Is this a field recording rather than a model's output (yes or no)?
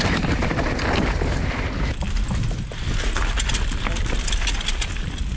yes